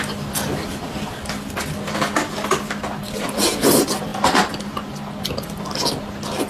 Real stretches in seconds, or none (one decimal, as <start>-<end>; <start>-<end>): 0.0-4.1; 5.0-6.5